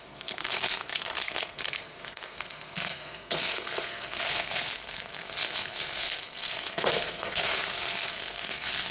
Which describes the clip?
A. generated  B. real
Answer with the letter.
A